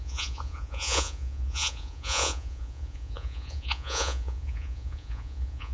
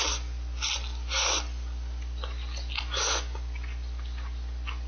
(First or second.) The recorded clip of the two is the second